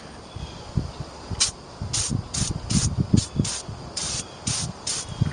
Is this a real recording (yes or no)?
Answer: yes